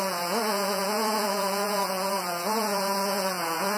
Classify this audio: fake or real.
fake